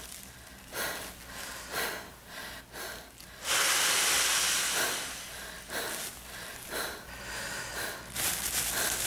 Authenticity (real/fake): real